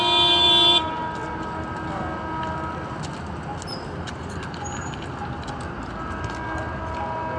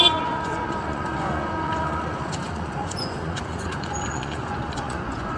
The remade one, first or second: second